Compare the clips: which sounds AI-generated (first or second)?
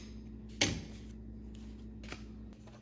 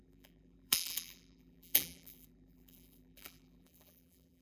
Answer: second